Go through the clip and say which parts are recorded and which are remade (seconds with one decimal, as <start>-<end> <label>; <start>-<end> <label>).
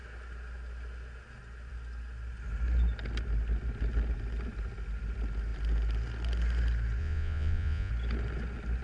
0.0-7.0 recorded; 7.0-7.9 remade; 7.9-8.8 recorded